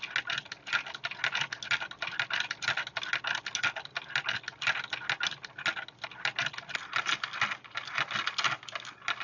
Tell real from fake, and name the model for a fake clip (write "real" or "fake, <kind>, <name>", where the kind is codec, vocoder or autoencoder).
real